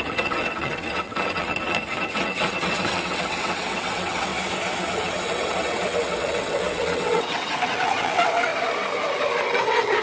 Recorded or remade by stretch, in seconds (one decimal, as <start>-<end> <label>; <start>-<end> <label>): 0.0-4.3 remade; 4.3-4.9 recorded; 4.9-8.5 remade; 8.5-9.3 recorded; 9.3-10.0 remade